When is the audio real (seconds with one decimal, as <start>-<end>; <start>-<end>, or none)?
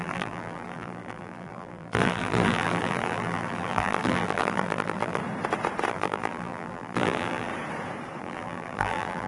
5.2-5.9; 7.5-8.2